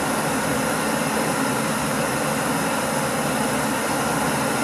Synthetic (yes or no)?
no